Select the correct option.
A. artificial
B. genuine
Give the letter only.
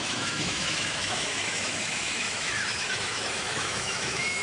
A